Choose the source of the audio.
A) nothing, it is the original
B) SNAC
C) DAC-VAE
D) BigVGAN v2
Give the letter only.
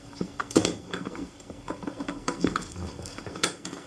B